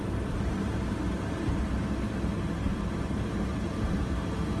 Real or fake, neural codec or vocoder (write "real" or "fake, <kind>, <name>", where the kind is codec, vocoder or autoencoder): fake, vocoder, BigVGAN v2